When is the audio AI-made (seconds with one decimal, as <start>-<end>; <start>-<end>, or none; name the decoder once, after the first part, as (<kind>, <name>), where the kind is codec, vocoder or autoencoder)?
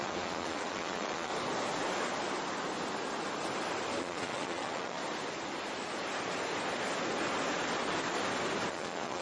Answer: 0.0-1.3 (vocoder, Vocos); 4.0-5.0; 8.7-9.2